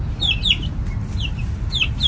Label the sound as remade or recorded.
recorded